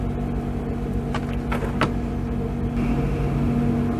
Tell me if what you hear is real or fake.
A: real